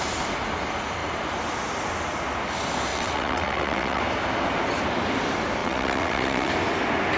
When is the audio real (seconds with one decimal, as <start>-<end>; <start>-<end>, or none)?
0.0-2.9; 4.0-5.6; 6.5-7.2